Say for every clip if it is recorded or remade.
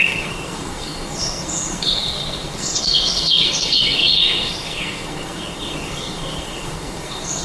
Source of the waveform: remade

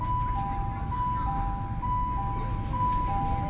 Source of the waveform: recorded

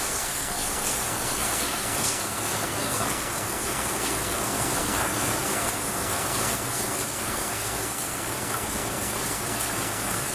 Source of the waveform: remade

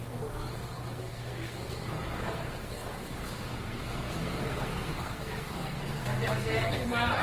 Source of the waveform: remade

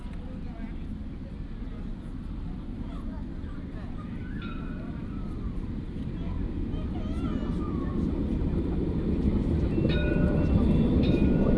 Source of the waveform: recorded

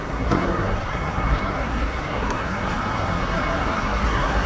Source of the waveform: remade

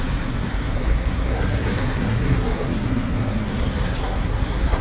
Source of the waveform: remade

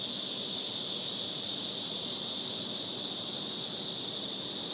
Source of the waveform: recorded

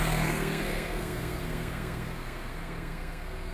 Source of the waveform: remade